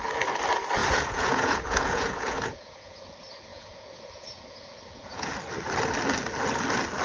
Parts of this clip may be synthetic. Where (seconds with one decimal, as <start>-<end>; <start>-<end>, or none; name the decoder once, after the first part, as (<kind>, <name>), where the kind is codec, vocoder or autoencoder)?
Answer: 0.8-3.1 (vocoder, Vocos); 3.5-5.3